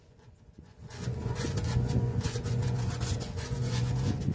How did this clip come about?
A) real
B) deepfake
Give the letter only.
B